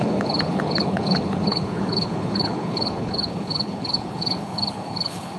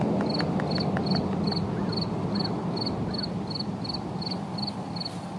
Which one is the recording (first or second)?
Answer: second